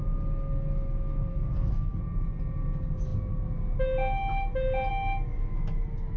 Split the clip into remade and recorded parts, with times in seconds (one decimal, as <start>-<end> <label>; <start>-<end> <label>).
0.0-1.3 recorded; 1.3-2.0 remade; 2.0-6.2 recorded